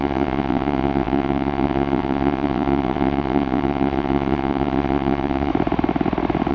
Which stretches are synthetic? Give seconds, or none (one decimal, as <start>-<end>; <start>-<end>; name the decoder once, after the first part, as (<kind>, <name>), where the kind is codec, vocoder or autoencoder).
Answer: 0.0-5.5 (vocoder, WaveNeXt)